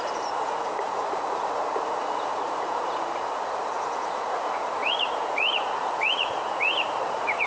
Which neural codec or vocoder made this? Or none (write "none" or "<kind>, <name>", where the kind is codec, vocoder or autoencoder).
vocoder, Vocos